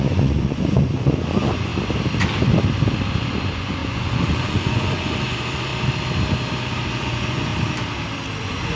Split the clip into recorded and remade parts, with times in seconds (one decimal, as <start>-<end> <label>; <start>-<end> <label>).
0.0-1.7 remade; 1.7-3.1 recorded; 3.1-5.7 remade; 5.7-6.9 recorded; 6.9-7.5 remade; 7.5-8.4 recorded; 8.4-8.8 remade